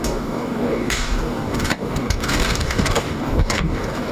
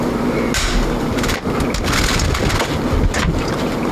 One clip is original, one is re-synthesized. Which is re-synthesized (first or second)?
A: first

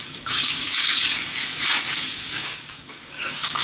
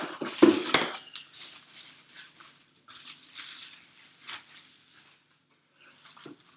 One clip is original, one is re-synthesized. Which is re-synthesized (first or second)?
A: first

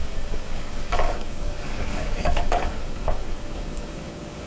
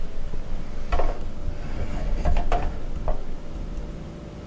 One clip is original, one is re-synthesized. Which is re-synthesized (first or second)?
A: first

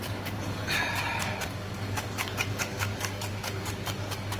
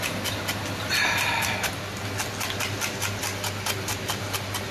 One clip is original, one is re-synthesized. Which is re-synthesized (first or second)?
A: first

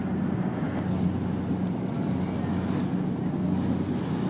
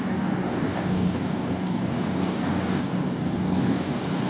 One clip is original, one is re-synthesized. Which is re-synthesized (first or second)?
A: second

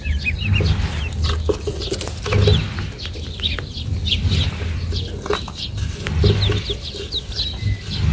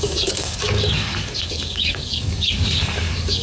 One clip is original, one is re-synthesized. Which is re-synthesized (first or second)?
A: second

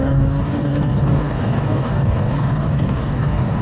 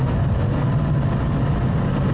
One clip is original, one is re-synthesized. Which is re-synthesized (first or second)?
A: first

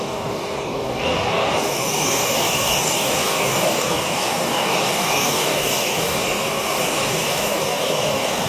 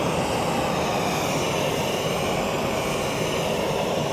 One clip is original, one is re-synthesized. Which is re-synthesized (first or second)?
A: first